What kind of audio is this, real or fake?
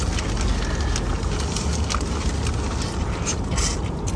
real